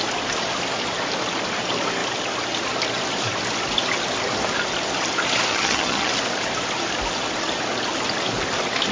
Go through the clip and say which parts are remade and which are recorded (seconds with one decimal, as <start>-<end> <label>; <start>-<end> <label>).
0.0-5.5 recorded; 5.5-6.1 remade; 6.1-8.9 recorded